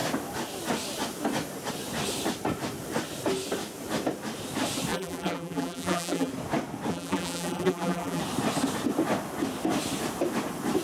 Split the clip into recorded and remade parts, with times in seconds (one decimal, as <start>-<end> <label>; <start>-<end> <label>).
0.0-4.9 recorded; 4.9-6.3 remade; 6.3-6.9 recorded; 6.9-8.2 remade; 8.2-10.8 recorded